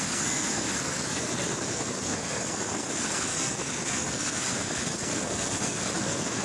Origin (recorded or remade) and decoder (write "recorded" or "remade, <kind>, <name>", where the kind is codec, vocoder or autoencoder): remade, codec, SNAC